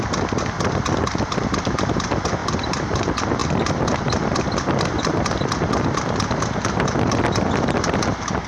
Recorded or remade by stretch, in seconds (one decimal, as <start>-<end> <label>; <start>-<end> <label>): 0.0-2.4 recorded; 2.4-3.0 remade; 3.0-3.4 recorded; 3.4-4.5 remade; 4.5-8.5 recorded